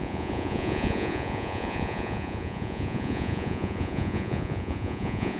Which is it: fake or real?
fake